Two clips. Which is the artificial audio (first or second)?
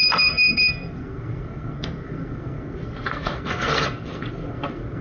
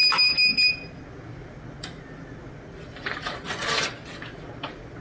first